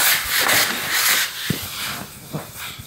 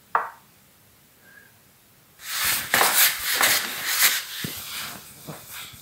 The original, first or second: second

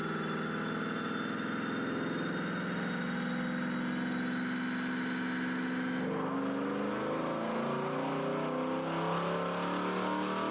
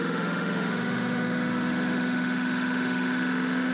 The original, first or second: first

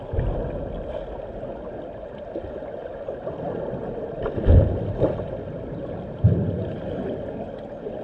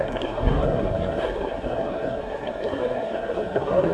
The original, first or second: first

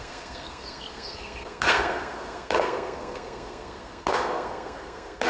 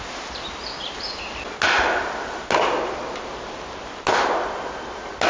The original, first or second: second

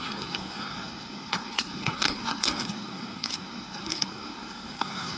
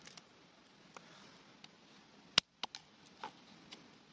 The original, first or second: second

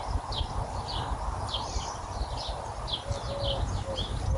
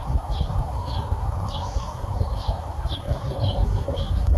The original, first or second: first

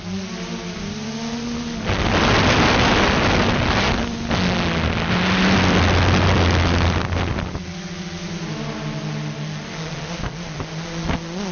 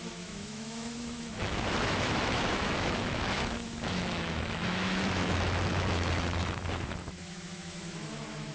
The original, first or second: first